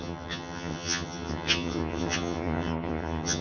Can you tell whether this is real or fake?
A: fake